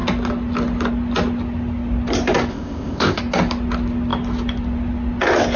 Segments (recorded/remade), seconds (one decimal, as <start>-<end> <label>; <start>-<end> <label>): 0.0-2.5 recorded; 2.5-3.2 remade; 3.2-5.6 recorded